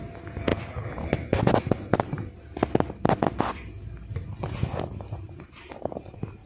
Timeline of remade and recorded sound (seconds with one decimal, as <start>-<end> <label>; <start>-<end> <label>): 0.0-6.5 recorded